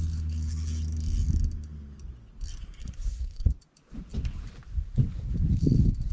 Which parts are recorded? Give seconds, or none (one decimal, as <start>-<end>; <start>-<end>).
0.0-2.8; 3.5-6.1